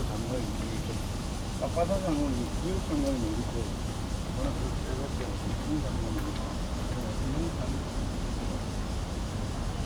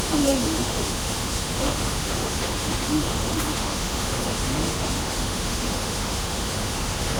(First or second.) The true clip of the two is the first